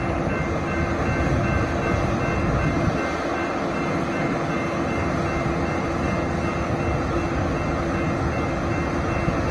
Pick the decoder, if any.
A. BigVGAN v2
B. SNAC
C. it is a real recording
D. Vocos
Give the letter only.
C